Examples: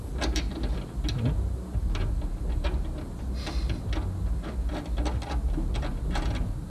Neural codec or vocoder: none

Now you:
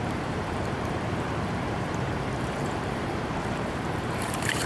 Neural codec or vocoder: vocoder, BigVGAN v2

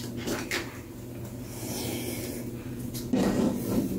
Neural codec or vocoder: none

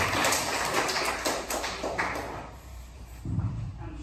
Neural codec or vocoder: vocoder, BigVGAN v2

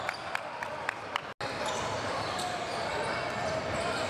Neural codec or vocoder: none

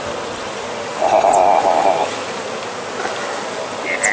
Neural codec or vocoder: none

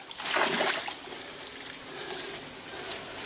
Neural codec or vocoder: none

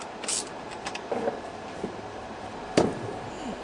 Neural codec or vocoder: none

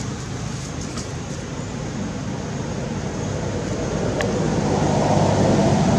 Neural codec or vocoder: none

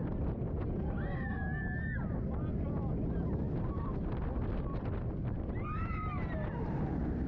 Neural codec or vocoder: none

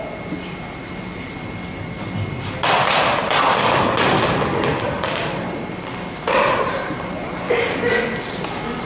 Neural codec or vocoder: none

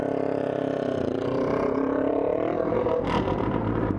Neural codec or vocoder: vocoder, BigVGAN v2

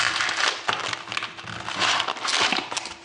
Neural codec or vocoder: none